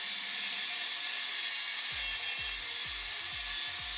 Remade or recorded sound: recorded